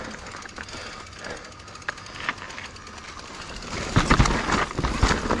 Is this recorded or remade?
recorded